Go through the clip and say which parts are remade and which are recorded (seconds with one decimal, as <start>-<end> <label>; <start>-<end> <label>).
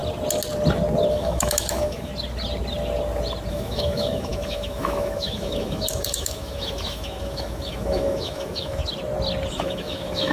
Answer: 0.0-1.1 recorded; 1.1-2.1 remade; 2.1-3.5 recorded; 3.5-8.8 remade; 8.8-9.5 recorded; 9.5-10.3 remade